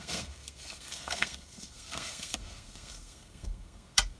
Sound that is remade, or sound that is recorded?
remade